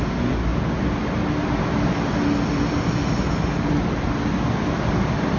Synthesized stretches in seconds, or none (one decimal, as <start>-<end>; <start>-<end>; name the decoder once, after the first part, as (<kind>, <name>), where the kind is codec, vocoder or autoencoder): none